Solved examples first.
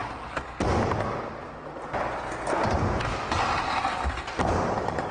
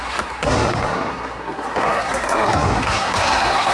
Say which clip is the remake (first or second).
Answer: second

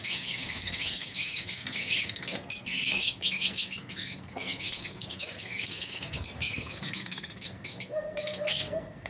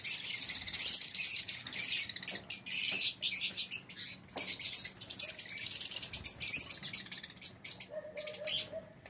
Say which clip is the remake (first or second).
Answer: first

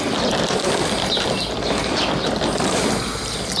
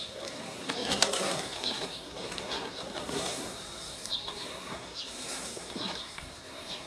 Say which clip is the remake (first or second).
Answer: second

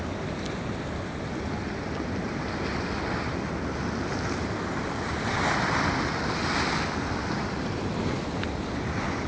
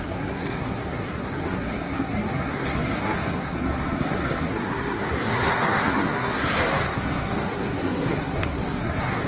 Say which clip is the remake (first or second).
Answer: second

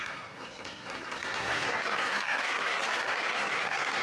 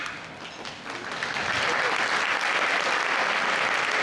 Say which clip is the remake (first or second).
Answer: first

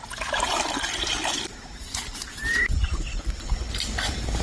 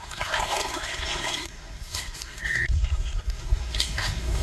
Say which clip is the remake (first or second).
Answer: second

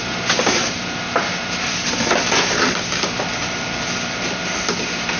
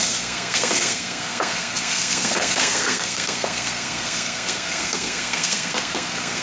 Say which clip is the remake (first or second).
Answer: second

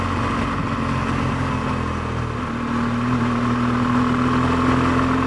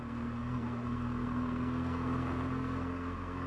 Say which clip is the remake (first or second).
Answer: second